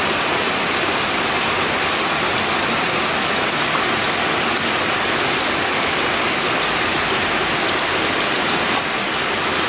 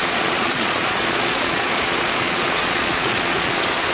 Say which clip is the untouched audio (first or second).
first